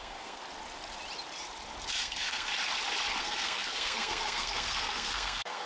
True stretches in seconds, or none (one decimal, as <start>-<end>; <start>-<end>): 0.4-1.9; 2.5-3.2